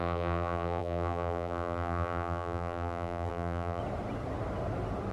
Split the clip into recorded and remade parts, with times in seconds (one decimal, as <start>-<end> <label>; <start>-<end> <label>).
0.0-3.8 remade; 3.8-5.1 recorded